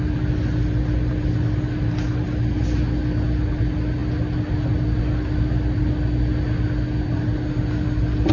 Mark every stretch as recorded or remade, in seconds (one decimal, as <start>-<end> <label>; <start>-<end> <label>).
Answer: 0.0-8.3 recorded